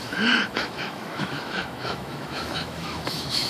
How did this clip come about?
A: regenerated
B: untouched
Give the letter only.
A